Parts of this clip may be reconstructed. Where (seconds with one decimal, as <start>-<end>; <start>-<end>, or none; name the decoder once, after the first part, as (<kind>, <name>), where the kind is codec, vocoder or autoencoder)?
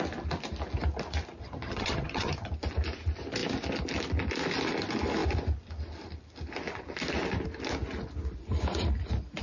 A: 1.4-2.5 (vocoder, HiFi-GAN)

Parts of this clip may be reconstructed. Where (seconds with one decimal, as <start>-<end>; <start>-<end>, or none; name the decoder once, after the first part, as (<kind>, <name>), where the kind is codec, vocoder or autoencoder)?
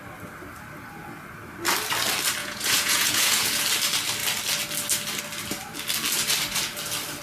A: 2.4-3.6 (vocoder, Vocos)